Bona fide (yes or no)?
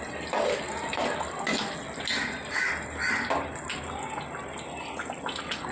yes